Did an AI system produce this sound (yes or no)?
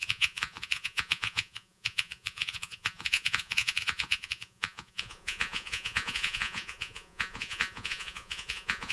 yes